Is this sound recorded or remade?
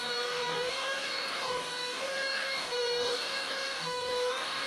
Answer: remade